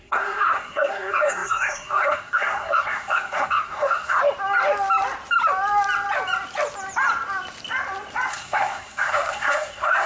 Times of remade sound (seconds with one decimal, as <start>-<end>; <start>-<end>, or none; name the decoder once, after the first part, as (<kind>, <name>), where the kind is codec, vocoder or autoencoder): 0.0-4.2 (codec, SNAC); 8.3-10.1

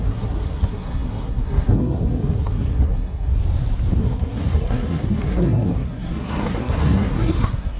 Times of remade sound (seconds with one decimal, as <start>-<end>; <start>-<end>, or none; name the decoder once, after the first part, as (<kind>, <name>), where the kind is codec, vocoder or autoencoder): 0.0-3.4 (codec, SNAC); 4.0-7.8

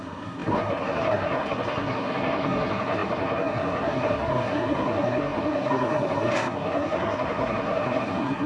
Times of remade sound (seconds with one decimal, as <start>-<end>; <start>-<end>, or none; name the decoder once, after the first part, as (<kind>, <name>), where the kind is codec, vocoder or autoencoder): 0.0-8.5 (codec, SNAC)